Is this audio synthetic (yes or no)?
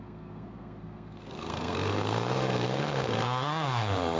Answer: yes